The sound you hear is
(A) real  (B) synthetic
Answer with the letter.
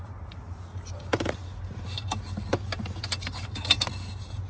A